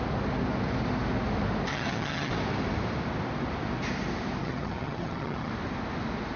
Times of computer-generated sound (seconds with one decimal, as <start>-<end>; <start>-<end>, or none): 1.7-2.3; 4.4-5.5